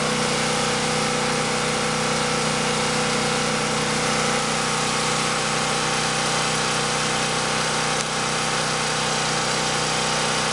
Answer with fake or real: real